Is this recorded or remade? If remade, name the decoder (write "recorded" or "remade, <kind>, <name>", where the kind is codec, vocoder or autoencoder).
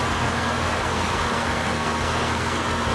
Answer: remade, codec, SNAC